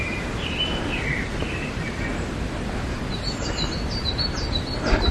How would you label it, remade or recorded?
recorded